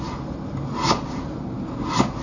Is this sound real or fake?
real